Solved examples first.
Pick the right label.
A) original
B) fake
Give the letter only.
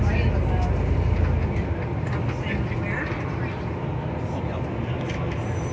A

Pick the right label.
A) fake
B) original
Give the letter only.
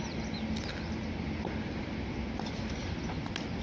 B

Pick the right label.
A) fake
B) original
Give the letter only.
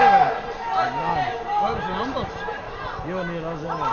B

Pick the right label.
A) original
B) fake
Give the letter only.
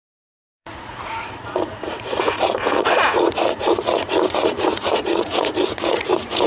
B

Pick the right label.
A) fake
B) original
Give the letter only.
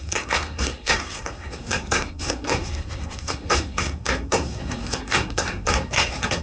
A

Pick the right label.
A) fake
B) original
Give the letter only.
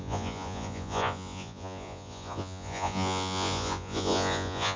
A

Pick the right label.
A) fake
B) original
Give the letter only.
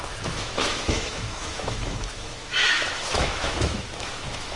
A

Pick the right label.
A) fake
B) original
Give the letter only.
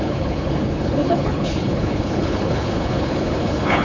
A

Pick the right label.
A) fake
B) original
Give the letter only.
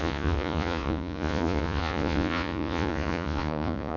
A